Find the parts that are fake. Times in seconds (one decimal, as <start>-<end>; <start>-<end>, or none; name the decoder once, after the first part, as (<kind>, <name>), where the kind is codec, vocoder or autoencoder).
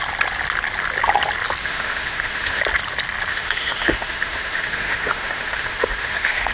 1.6-2.6 (autoencoder, DAC-VAE); 3.3-6.5